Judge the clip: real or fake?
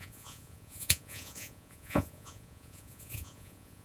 fake